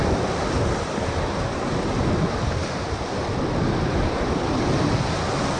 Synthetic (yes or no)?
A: no